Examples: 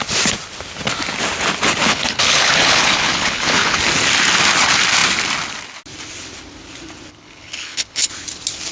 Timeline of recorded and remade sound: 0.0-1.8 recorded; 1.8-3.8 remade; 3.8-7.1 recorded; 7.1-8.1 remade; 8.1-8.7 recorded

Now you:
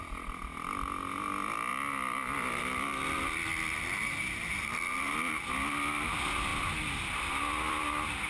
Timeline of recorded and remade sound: 0.0-8.3 recorded